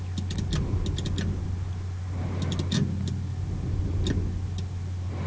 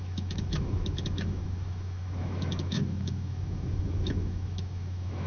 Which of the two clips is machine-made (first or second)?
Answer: second